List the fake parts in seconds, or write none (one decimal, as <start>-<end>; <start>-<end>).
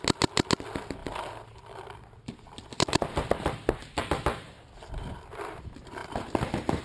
none